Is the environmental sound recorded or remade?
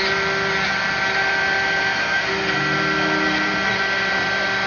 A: recorded